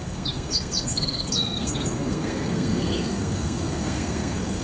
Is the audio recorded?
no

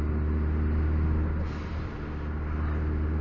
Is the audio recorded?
yes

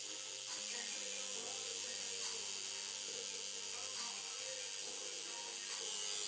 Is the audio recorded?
yes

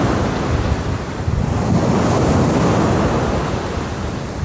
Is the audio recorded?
yes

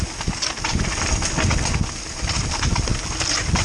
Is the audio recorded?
yes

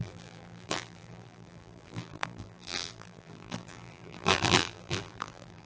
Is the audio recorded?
no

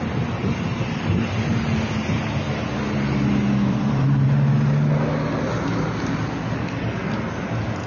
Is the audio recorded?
yes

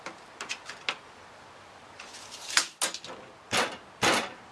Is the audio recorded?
yes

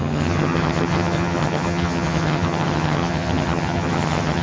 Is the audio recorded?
no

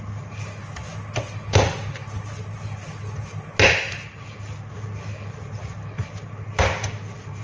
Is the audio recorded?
yes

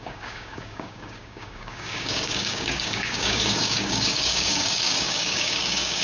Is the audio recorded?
no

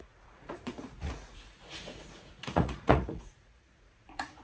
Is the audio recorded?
no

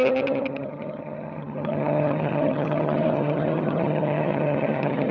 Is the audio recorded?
no